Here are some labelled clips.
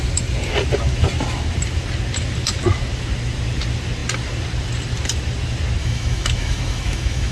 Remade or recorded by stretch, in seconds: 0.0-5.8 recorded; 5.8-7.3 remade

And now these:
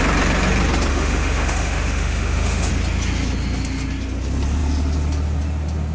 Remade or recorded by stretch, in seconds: 0.0-0.9 recorded; 0.9-2.7 remade; 2.7-5.9 recorded

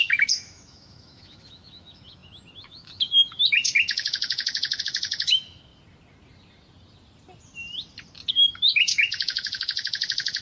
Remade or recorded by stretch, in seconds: 0.0-5.7 remade; 5.7-8.3 recorded; 8.3-10.4 remade